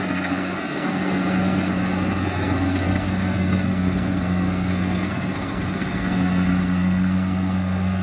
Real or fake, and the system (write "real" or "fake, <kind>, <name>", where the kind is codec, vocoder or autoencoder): fake, codec, SNAC